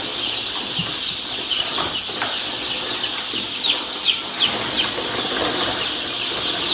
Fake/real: real